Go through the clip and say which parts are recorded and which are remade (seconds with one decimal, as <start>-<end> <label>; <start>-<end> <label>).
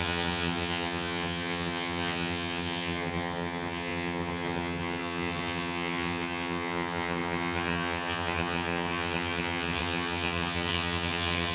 0.0-11.5 remade